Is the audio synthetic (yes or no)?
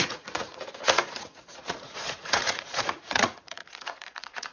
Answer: yes